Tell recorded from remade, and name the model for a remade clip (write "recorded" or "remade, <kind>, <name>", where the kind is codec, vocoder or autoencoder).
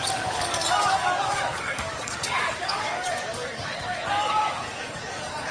remade, codec, DAC